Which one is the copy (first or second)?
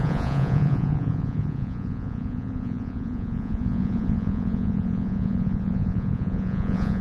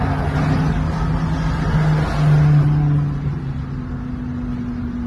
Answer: first